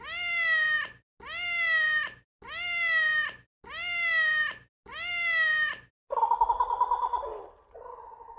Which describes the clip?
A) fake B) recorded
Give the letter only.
B